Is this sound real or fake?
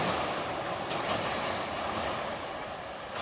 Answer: fake